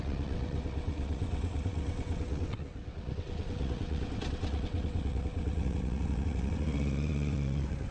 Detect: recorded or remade remade